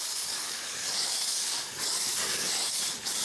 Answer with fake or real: fake